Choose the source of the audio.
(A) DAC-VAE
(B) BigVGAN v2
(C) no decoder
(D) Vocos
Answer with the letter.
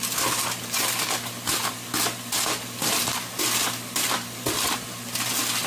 C